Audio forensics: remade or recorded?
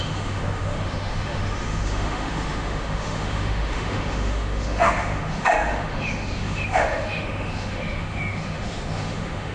remade